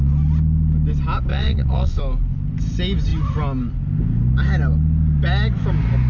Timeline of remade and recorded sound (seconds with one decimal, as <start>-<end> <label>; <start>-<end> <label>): 0.0-1.3 recorded; 1.3-2.0 remade; 2.0-6.1 recorded